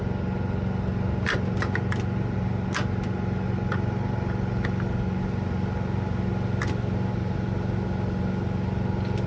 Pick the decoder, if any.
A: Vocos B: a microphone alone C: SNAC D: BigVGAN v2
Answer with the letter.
B